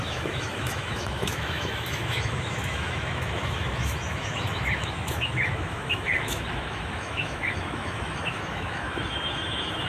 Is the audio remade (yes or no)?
yes